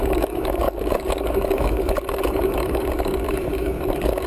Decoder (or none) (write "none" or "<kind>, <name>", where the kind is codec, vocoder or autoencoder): codec, DAC